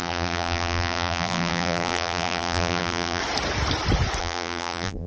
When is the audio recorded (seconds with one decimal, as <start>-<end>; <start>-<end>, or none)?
3.2-4.2